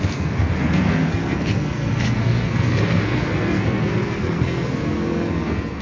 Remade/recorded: remade